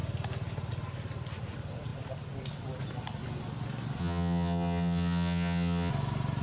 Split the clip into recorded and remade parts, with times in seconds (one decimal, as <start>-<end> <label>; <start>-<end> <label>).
0.0-4.0 recorded; 4.0-5.9 remade; 5.9-6.4 recorded